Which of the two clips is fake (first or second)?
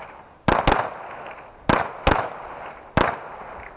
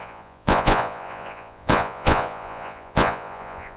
second